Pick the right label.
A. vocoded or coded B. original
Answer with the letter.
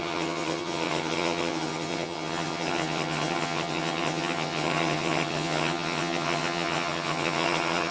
A